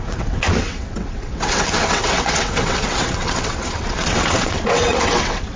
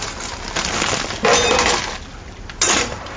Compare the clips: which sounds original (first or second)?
second